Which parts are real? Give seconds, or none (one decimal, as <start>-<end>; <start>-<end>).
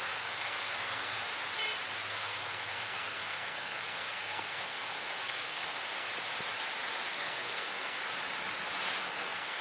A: 1.3-2.1; 6.1-7.1; 8.0-9.0